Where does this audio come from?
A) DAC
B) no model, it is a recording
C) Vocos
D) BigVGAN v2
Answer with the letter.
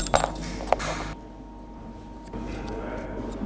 B